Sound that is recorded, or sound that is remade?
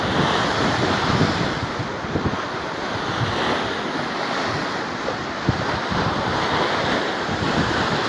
recorded